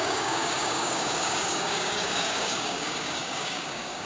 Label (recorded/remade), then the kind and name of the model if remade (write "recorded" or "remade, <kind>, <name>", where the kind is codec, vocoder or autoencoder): remade, codec, DAC